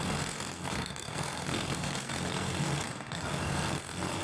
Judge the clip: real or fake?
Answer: fake